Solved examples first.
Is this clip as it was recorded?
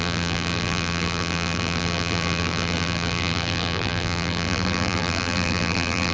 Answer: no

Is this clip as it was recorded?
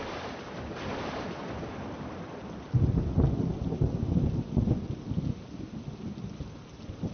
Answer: yes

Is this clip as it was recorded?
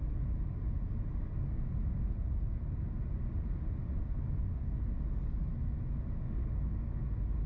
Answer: yes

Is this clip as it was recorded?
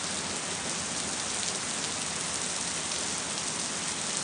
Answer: yes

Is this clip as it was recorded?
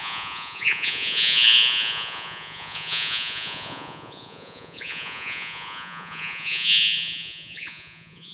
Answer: no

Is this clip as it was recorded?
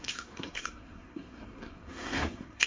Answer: no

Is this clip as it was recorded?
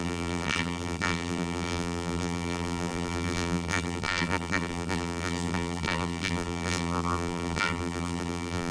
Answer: no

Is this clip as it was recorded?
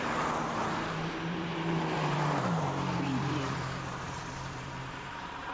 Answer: no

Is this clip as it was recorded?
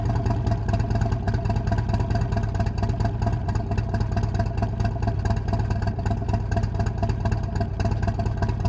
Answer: yes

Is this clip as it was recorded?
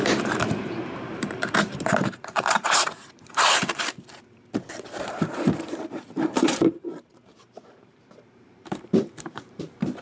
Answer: no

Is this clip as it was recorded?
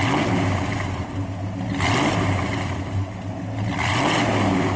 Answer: yes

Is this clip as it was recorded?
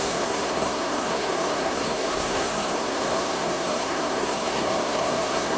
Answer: no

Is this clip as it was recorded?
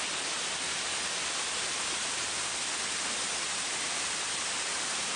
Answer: yes